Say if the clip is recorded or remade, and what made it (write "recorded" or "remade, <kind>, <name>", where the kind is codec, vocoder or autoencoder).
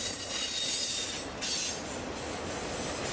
recorded